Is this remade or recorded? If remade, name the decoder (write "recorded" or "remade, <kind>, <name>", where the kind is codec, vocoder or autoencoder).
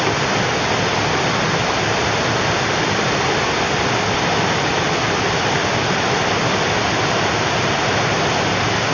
recorded